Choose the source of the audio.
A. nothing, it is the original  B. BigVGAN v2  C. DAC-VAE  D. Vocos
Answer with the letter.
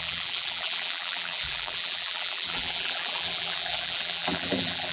B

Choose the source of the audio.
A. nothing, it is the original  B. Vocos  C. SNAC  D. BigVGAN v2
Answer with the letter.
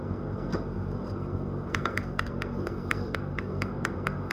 C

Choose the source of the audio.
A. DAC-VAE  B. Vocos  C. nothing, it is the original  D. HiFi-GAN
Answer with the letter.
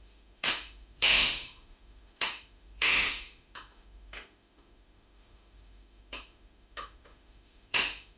A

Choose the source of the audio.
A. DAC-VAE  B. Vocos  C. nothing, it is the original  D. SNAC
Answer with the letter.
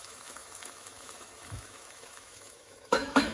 A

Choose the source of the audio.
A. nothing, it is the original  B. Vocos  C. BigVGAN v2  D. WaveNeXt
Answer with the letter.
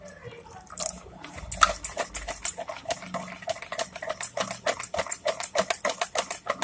A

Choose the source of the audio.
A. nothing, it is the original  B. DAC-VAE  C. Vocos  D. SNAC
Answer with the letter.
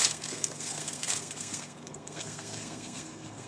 D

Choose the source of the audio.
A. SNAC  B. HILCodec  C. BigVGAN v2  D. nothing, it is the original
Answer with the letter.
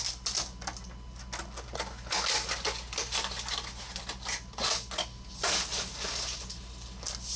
D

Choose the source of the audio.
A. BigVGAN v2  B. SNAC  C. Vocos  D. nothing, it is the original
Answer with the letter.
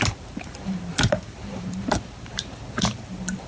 A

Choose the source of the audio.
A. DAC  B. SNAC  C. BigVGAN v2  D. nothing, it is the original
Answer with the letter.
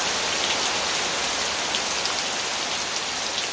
D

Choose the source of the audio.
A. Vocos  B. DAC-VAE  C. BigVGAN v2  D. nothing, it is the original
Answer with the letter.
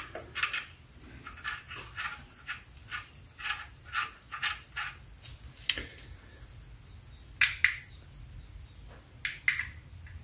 D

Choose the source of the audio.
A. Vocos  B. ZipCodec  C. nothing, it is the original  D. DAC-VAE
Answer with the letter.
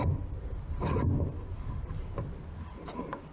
C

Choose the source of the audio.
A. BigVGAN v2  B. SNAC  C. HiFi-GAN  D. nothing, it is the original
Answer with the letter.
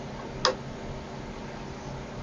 D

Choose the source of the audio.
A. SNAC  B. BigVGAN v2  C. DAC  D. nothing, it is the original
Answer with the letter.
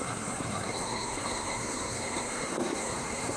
A